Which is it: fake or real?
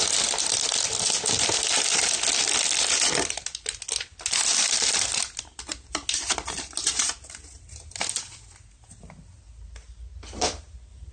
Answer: real